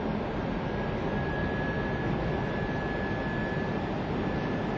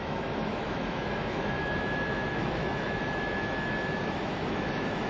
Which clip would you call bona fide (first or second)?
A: first